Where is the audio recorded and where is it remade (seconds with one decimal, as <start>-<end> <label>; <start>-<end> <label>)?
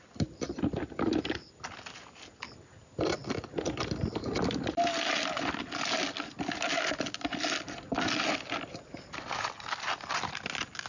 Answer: 0.0-10.9 recorded